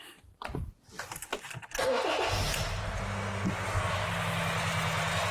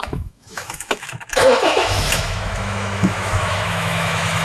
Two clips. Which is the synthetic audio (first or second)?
second